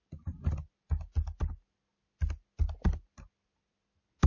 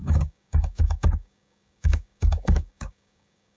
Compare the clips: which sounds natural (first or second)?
first